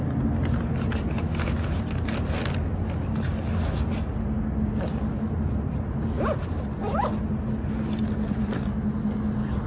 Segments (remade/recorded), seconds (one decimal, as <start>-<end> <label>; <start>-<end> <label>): 0.0-9.7 recorded

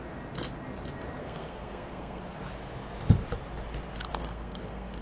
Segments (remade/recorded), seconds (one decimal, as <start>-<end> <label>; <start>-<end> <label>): 0.0-1.2 recorded; 1.2-2.2 remade; 2.2-4.1 recorded; 4.1-5.0 remade